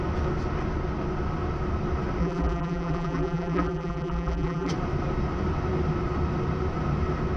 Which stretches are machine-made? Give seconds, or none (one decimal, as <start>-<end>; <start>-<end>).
2.2-4.7